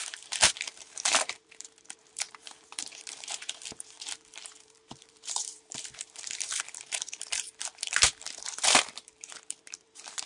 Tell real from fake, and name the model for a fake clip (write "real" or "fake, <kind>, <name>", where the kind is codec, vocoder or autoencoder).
fake, vocoder, BigVGAN v2